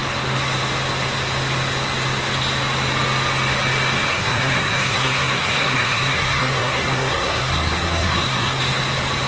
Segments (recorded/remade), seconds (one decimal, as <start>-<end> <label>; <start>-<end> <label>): 0.0-4.1 recorded; 4.1-8.6 remade; 8.6-9.3 recorded